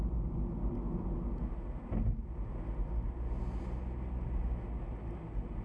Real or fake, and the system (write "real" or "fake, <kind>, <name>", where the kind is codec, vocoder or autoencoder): real